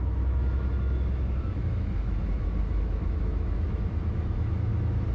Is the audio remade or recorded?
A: remade